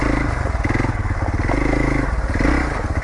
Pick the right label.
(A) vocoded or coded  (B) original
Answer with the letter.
B